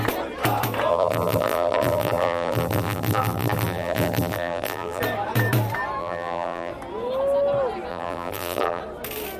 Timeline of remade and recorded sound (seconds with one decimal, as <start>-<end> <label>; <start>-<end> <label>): 0.0-0.9 recorded; 0.9-5.0 remade; 5.0-6.0 recorded; 6.0-6.7 remade; 6.7-7.9 recorded; 7.9-8.8 remade; 8.8-9.4 recorded